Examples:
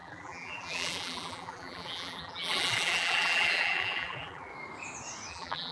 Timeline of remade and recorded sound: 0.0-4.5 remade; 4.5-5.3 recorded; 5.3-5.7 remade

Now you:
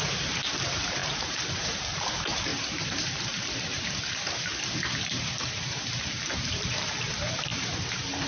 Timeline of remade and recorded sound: 0.0-8.3 remade

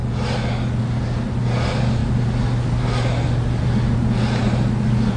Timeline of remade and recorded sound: 0.0-5.2 recorded

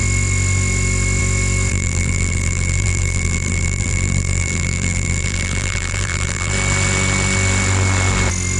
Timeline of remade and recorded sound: 0.0-1.7 recorded; 1.7-6.5 remade; 6.5-8.6 recorded